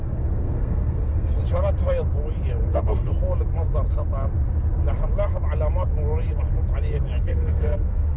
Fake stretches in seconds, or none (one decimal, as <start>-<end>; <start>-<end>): 0.0-1.4; 2.7-3.1; 7.2-8.2